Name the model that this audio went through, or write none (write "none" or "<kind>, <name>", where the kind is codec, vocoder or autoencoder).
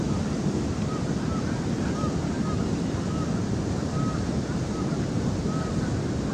none